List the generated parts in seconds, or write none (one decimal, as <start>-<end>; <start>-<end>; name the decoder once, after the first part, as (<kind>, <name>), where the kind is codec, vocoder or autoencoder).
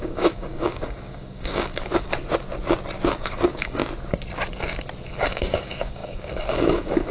0.0-2.1 (codec, DAC); 3.1-3.8; 5.2-7.1